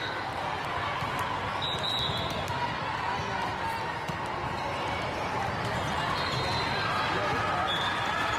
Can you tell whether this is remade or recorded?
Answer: recorded